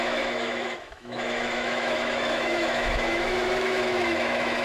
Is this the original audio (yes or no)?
no